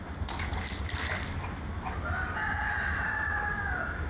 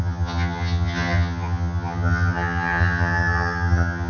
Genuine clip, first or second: first